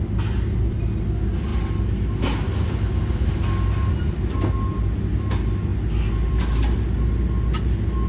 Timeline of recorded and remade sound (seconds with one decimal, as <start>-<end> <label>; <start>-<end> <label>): 0.0-8.1 recorded